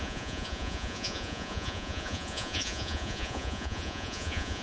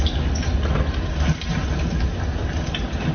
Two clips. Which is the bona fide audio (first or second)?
second